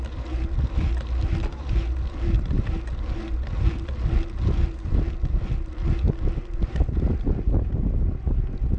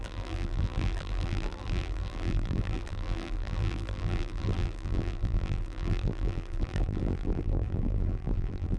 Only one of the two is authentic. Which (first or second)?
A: first